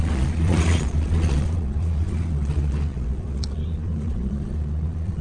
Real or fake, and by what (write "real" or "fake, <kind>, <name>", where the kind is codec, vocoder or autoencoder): fake, vocoder, Vocos